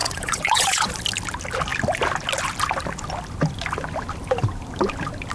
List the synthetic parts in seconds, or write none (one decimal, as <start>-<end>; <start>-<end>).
0.0-0.9